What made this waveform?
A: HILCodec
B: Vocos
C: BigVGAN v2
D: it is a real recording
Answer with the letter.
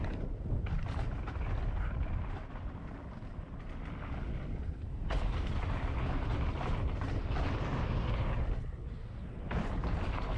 C